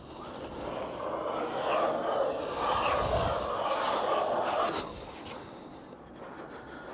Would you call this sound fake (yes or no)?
no